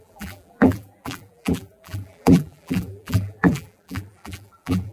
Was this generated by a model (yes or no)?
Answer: yes